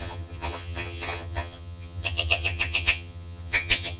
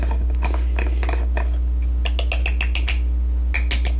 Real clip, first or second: second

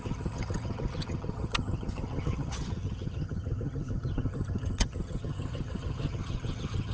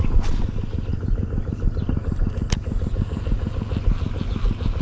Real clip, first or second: second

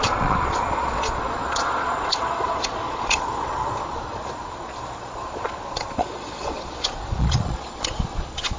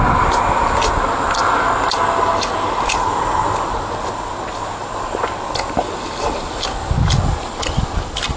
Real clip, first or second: second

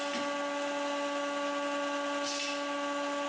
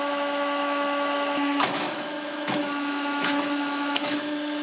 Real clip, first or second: first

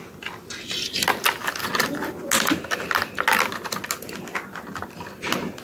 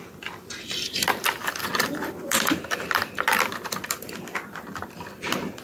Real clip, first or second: first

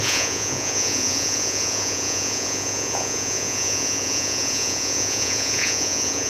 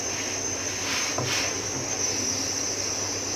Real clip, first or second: second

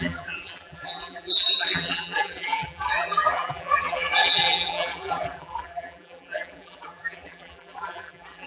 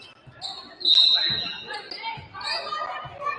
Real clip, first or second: second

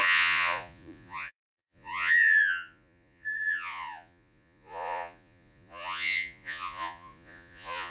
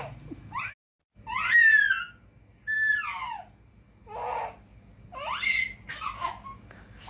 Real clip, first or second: second